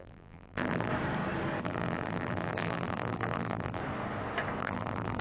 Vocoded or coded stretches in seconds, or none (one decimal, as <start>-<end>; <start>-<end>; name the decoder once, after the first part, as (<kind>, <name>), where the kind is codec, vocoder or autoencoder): 0.0-0.9 (vocoder, BigVGAN v2); 1.6-3.8; 4.6-5.2

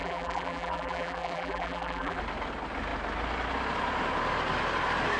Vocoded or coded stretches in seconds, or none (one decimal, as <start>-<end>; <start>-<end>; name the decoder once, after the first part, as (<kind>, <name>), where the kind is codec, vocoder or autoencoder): 0.0-2.2 (vocoder, BigVGAN v2)

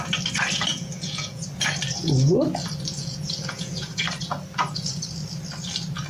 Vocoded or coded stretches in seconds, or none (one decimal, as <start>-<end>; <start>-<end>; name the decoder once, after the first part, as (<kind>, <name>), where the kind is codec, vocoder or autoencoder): 0.7-1.5 (vocoder, Vocos); 3.0-4.0

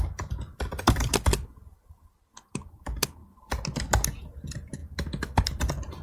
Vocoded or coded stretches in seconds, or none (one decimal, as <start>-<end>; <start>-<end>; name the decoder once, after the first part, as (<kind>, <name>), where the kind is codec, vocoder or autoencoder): 0.0-3.2 (vocoder, BigVGAN v2); 4.2-4.8; 5.4-6.0

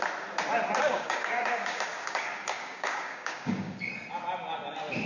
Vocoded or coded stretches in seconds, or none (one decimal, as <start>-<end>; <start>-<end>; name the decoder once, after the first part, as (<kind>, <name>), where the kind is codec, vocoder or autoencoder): 0.8-3.9 (codec, DAC)

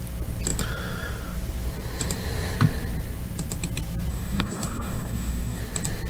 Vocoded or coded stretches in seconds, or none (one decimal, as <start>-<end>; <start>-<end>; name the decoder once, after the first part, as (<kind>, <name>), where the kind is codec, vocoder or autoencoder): 4.1-5.6 (codec, DAC)